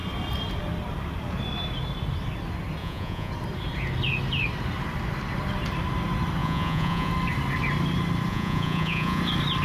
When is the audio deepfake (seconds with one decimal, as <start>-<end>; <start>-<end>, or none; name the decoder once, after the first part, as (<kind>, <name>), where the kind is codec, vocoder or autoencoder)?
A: 2.8-3.3 (vocoder, Vocos); 6.4-7.1; 8.3-9.2